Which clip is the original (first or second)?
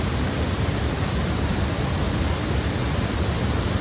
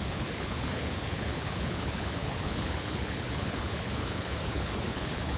first